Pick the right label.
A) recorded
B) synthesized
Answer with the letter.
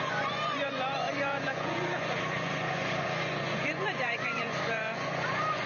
B